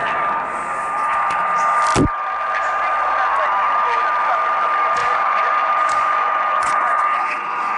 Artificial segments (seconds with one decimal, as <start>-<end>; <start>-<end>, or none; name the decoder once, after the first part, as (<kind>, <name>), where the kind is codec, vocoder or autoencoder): 5.0-7.8 (vocoder, Vocos)